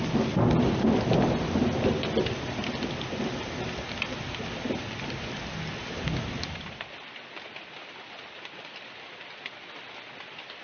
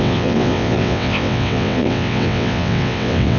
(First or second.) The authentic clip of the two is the first